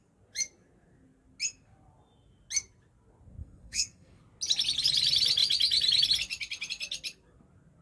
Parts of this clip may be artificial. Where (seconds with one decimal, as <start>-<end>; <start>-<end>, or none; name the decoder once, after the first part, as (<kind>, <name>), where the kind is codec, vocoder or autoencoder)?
3.4-4.2 (codec, SNAC)